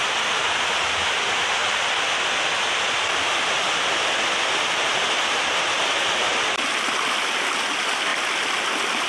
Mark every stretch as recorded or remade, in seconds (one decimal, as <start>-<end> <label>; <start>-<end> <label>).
0.0-1.6 recorded; 1.6-4.5 remade; 4.5-6.2 recorded; 6.2-6.9 remade; 6.9-8.1 recorded; 8.1-8.7 remade; 8.7-9.1 recorded